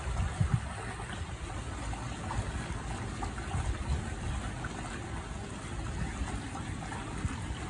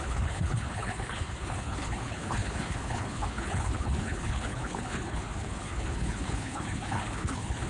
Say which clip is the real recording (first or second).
first